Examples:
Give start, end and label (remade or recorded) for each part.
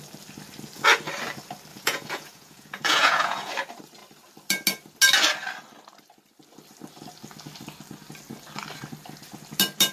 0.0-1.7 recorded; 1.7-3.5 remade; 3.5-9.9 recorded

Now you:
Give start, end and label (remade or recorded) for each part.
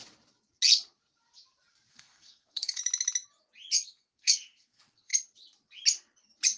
0.0-1.9 recorded; 1.9-2.8 remade; 2.8-3.9 recorded; 3.9-5.1 remade; 5.1-6.6 recorded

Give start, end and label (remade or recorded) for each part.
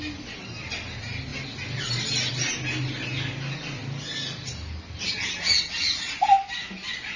0.0-7.2 recorded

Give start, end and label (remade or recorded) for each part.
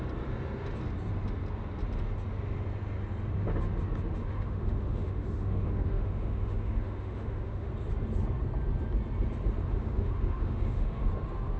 0.0-4.2 recorded; 4.2-7.7 remade; 7.7-9.7 recorded; 9.7-11.1 remade; 11.1-11.6 recorded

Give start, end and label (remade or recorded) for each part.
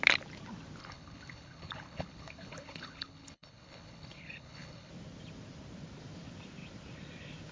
0.0-0.8 recorded; 0.8-4.9 remade; 4.9-7.5 recorded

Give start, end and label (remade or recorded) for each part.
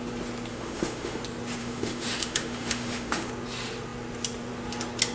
0.0-0.5 recorded; 0.5-1.2 remade; 1.2-1.6 recorded; 1.6-3.3 remade; 3.3-5.1 recorded